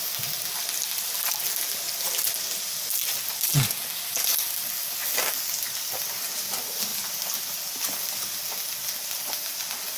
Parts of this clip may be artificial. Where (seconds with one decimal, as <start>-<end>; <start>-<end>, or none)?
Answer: none